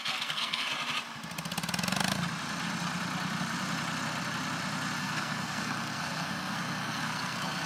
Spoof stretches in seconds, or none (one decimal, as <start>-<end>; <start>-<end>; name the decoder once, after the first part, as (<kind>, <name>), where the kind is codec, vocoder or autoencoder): 0.0-0.7 (codec, SNAC); 5.0-7.7